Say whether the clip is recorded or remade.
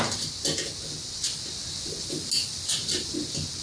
recorded